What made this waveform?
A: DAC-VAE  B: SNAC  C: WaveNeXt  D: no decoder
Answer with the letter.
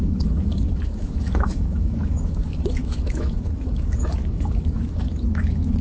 A